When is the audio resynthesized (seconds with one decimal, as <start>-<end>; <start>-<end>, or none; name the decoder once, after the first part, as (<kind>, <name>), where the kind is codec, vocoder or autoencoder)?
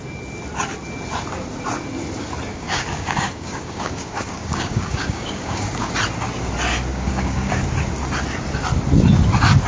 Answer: 2.5-5.9 (codec, DAC); 6.9-7.6